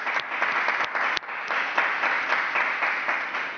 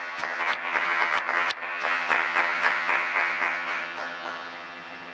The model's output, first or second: second